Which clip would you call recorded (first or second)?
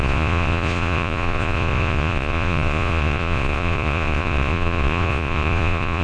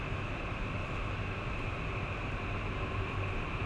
second